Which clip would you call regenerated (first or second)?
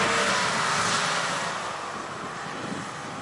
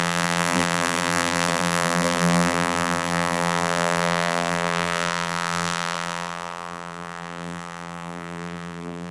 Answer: second